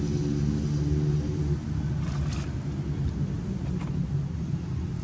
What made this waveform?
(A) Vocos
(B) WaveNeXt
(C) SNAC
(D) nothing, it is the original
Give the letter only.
D